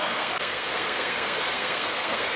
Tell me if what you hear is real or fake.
fake